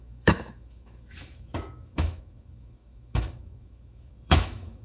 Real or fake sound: fake